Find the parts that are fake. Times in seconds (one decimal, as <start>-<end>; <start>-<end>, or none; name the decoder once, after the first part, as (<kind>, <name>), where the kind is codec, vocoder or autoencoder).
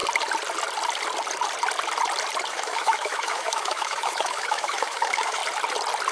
2.5-5.4 (autoencoder, DAC-VAE)